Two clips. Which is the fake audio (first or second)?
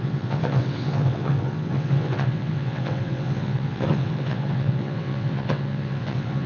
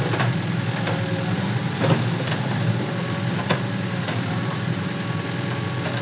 first